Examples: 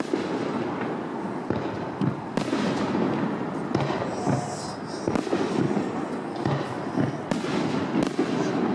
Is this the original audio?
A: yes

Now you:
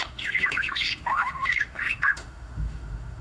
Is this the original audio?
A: no